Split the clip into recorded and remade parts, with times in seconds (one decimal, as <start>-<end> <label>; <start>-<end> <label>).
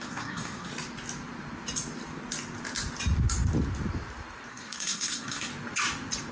0.0-0.7 remade; 0.7-4.5 recorded; 4.5-5.5 remade; 5.5-6.3 recorded